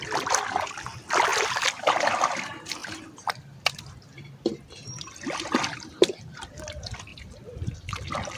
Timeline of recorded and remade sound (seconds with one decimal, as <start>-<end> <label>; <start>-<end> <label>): 0.0-8.4 remade